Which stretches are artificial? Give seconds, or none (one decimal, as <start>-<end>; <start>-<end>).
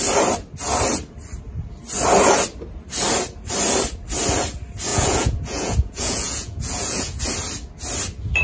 4.9-7.2